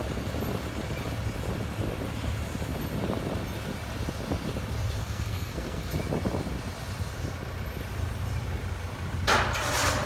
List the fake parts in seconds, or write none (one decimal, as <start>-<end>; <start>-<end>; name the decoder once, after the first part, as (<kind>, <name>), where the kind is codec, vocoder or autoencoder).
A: 5.0-5.9 (codec, SNAC)